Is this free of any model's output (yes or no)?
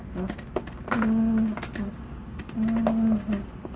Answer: yes